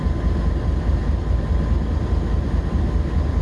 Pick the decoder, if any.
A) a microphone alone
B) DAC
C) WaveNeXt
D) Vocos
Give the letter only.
A